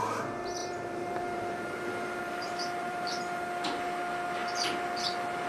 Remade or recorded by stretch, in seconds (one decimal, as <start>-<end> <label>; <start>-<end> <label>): 0.0-0.6 recorded; 0.6-3.2 remade; 3.2-5.5 recorded